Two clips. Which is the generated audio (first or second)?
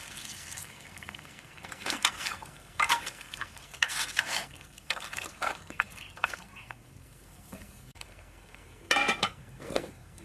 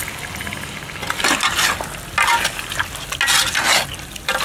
first